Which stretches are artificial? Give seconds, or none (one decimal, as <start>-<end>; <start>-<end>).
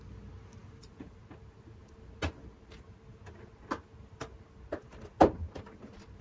none